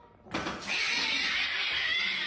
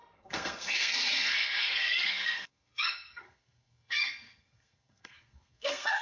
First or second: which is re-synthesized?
second